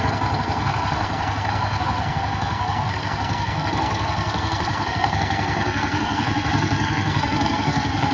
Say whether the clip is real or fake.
fake